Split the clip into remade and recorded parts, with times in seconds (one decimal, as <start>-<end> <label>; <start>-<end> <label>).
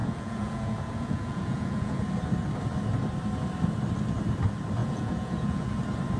0.0-2.0 remade; 2.0-4.8 recorded; 4.8-5.7 remade; 5.7-6.2 recorded